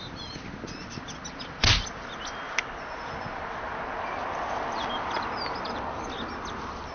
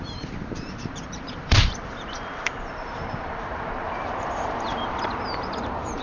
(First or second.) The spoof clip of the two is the second